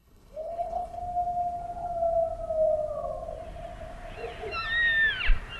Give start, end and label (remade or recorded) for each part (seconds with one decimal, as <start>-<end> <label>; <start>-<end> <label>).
0.0-1.0 remade; 1.0-5.6 recorded